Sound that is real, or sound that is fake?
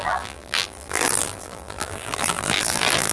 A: fake